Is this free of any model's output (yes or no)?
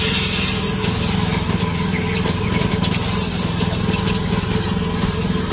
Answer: yes